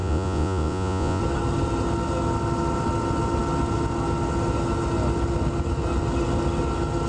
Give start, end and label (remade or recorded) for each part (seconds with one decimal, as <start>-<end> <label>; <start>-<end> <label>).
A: 0.0-1.2 remade; 1.2-7.1 recorded